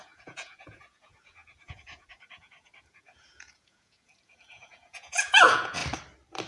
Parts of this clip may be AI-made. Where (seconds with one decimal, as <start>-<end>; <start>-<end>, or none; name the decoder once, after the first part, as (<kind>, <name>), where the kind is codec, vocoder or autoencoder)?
0.0-5.8 (vocoder, Vocos)